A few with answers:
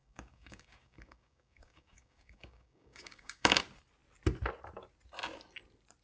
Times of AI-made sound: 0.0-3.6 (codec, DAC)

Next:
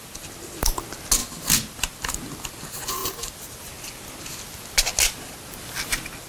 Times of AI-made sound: 3.0-3.7 (vocoder, BigVGAN v2)

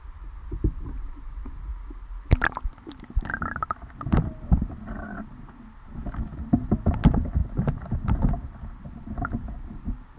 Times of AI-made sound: none

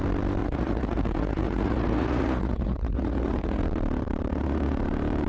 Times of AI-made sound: 0.4-3.6 (vocoder, Vocos); 4.3-4.8

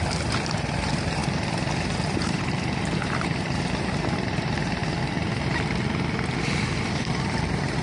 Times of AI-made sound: 0.0-1.2 (vocoder, BigVGAN v2); 1.8-4.8; 6.8-7.8

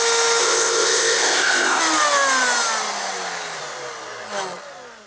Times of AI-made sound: 0.4-1.8 (codec, ZipCodec)

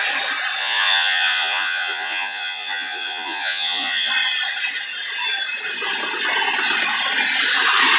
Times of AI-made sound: 0.6-4.1 (vocoder, Vocos)

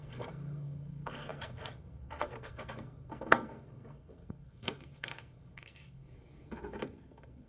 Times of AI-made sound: 0.0-7.5 (codec, SNAC)